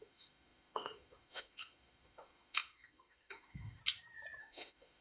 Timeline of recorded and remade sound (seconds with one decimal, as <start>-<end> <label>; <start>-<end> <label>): 0.0-3.8 remade; 3.8-4.4 recorded; 4.4-5.0 remade